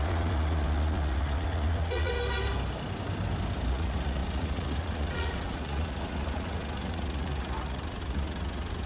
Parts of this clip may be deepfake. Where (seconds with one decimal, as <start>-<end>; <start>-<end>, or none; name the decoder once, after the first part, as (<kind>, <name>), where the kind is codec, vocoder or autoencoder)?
0.0-2.1 (vocoder, Vocos); 3.7-8.9